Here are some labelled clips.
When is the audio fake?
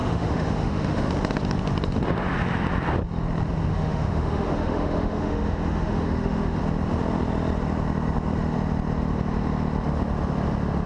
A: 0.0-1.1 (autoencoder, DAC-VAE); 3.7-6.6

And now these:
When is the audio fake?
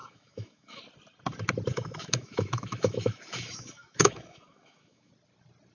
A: 0.0-0.8 (autoencoder, DAC-VAE); 1.7-5.1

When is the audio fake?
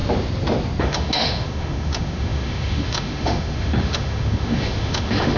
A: 0.8-5.4 (autoencoder, DAC-VAE)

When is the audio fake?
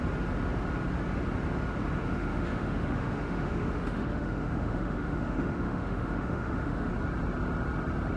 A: 2.0-6.9 (autoencoder, DAC-VAE)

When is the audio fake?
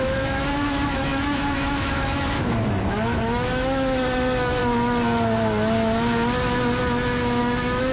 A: 0.0-4.6 (autoencoder, DAC-VAE); 7.4-7.9